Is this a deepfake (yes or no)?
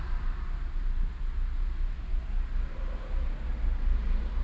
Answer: no